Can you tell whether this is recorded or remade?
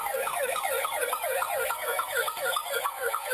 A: remade